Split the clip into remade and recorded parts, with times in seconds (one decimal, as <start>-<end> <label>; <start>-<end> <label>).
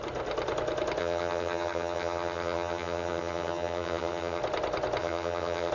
0.0-1.0 recorded; 1.0-4.4 remade; 4.4-5.0 recorded; 5.0-5.7 remade